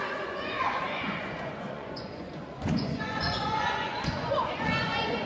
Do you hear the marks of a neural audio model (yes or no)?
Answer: yes